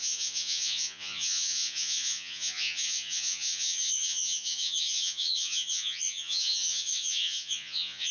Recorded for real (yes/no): no